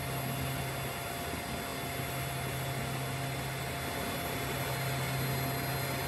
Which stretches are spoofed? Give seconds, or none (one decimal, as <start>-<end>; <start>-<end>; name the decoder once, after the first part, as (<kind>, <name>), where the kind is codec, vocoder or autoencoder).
none